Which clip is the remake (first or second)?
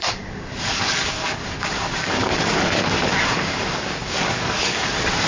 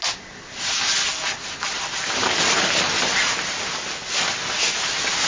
first